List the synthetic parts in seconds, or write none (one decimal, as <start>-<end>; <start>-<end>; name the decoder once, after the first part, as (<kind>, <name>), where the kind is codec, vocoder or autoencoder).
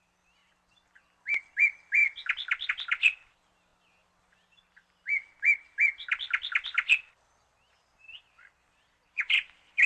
0.0-0.4 (vocoder, BigVGAN v2); 1.4-2.0; 2.7-3.7; 7.7-9.9